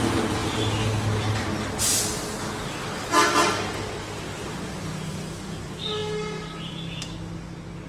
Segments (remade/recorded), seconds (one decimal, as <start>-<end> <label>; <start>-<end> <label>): 0.0-7.9 recorded